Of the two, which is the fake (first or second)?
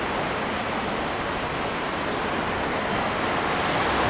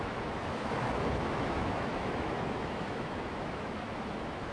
second